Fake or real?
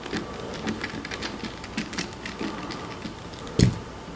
real